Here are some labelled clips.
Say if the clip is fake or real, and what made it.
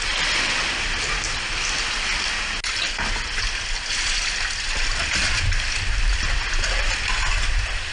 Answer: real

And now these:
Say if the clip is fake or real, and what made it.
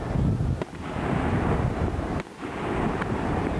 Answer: real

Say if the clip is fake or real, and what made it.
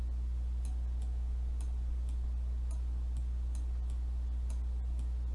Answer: real